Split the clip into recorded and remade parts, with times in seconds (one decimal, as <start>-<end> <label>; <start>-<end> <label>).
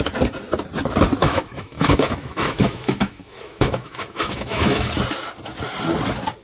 0.0-1.2 recorded; 1.2-4.9 remade; 4.9-6.4 recorded